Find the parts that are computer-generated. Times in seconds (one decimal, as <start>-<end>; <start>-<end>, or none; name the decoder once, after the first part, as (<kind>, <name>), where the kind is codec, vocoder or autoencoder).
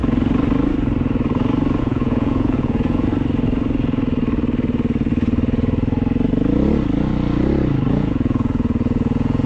1.8-3.1 (vocoder, Vocos); 7.9-9.5